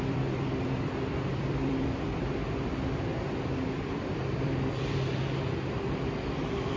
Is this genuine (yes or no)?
no